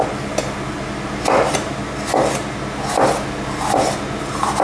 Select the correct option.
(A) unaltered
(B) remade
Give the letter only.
A